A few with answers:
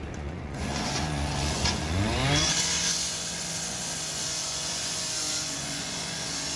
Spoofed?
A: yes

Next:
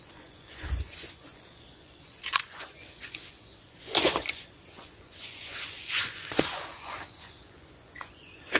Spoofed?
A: yes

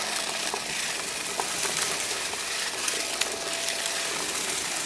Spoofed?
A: no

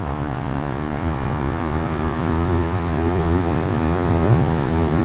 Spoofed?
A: yes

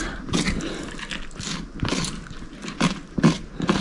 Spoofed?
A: no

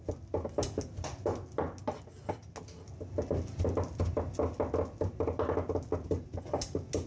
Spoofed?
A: no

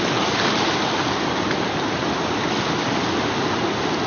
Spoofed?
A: no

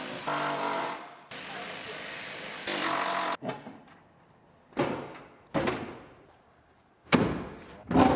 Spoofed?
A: no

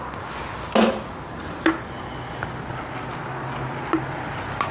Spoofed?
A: no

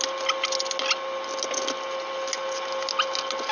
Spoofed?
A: no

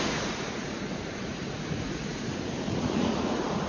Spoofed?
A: yes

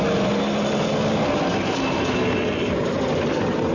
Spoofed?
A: no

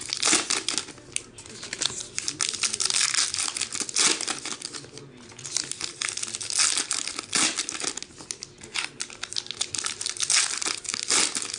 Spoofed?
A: no